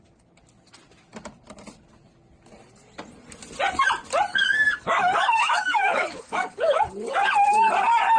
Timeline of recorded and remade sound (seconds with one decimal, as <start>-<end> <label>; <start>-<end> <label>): 0.0-4.3 recorded; 4.3-6.8 remade; 6.8-8.2 recorded